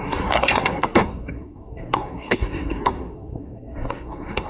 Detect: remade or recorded remade